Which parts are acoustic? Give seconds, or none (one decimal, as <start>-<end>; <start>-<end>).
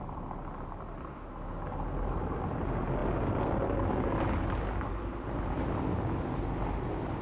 0.0-7.2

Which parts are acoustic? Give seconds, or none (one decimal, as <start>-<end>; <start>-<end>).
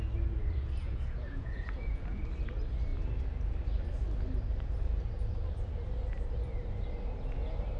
0.0-0.8; 2.2-7.8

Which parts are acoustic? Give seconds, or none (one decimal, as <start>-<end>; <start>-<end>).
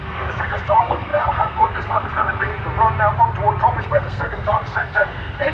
2.5-3.8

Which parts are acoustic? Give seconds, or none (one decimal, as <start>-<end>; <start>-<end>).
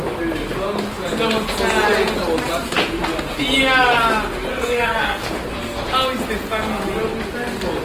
0.0-4.5; 5.2-7.8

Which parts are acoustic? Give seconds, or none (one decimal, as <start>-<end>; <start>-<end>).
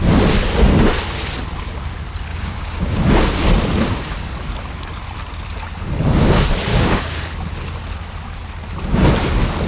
0.0-2.3; 3.1-6.7; 7.2-9.7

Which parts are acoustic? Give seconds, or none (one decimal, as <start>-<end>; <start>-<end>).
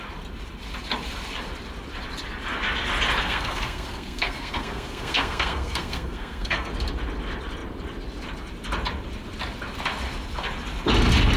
0.0-3.2; 6.7-11.4